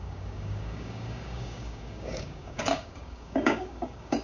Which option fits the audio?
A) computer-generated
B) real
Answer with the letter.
A